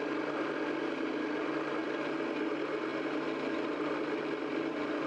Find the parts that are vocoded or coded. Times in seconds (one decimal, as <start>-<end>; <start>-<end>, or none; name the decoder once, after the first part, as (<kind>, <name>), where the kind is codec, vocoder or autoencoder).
none